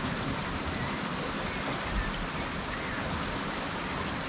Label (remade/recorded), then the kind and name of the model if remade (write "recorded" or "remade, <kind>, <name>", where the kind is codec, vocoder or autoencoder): recorded